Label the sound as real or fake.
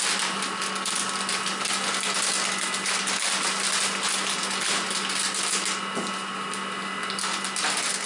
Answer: real